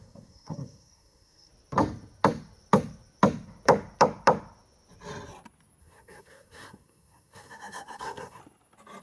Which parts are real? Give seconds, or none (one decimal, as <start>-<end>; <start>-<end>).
1.5-5.8; 8.4-9.0